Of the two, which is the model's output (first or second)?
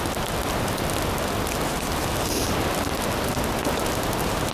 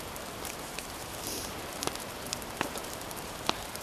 second